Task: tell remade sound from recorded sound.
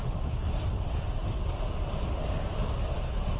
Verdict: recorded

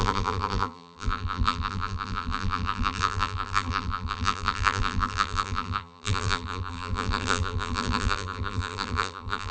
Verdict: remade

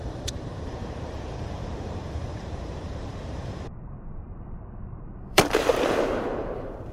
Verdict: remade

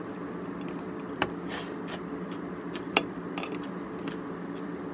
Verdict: recorded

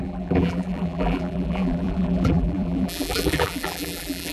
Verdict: remade